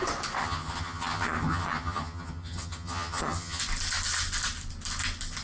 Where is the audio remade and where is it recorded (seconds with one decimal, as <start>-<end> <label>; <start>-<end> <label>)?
0.0-0.4 recorded; 0.4-3.6 remade; 3.6-5.4 recorded